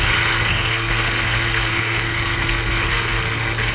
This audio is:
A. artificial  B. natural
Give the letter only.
A